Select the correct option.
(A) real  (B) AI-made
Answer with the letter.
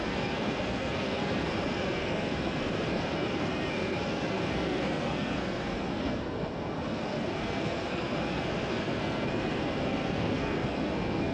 B